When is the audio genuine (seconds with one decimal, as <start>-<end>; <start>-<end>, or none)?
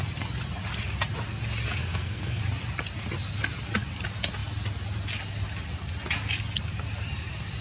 0.0-1.8; 2.4-7.6